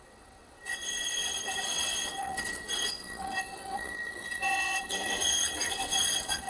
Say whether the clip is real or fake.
fake